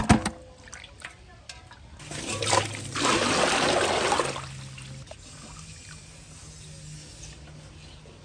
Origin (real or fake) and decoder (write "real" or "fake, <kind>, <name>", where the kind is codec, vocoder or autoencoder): real